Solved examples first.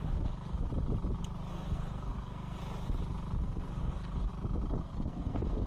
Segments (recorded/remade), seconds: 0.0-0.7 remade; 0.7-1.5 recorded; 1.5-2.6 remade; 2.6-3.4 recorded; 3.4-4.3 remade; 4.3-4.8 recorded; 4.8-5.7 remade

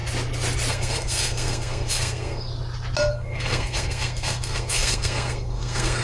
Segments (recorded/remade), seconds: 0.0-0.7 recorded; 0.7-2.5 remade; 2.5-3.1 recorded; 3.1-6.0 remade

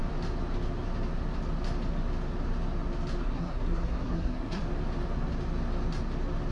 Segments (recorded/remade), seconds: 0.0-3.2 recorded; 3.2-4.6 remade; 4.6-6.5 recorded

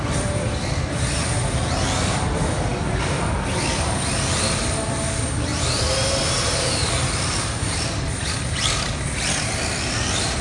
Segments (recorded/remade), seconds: 0.0-10.4 recorded

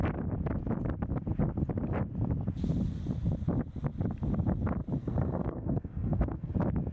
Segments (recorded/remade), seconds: 0.0-5.0 recorded; 5.0-6.5 remade; 6.5-6.9 recorded